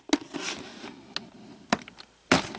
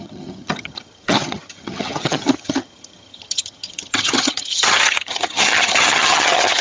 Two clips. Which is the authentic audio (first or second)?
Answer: first